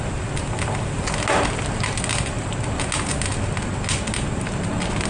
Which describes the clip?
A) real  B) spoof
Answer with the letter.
A